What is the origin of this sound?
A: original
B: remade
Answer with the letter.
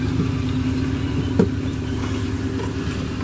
A